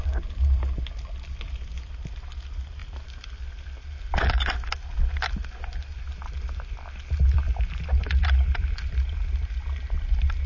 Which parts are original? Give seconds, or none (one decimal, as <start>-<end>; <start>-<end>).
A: 0.0-10.5